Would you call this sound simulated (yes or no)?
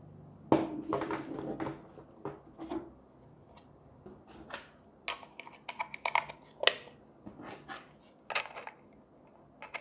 no